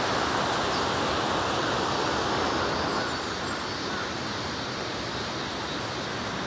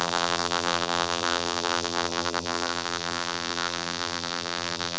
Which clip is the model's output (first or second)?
second